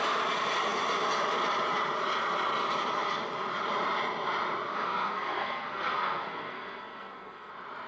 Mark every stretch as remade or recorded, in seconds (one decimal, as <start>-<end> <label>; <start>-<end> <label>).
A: 0.0-4.7 recorded; 4.7-7.5 remade; 7.5-7.9 recorded